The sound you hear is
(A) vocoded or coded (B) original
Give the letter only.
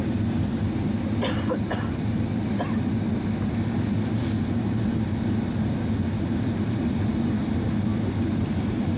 B